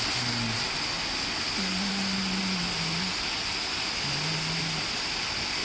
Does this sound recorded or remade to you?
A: recorded